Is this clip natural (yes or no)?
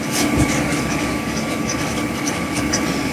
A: no